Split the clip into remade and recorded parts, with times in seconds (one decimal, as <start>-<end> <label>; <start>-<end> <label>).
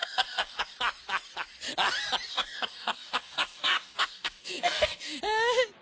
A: 0.0-0.6 remade; 0.6-2.3 recorded; 2.3-5.2 remade; 5.2-5.8 recorded